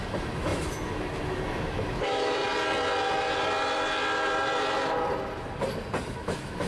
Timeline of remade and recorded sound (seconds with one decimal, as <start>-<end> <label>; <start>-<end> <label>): 0.0-2.4 remade; 2.4-6.1 recorded; 6.1-6.7 remade